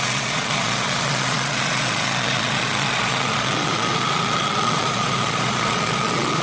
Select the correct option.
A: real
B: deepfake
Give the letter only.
B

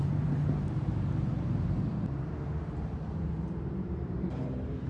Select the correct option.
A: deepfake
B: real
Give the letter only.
A